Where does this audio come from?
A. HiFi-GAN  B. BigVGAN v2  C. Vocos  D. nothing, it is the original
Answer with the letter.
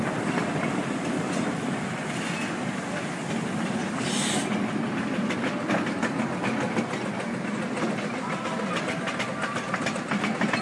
D